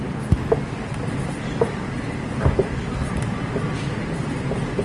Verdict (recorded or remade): recorded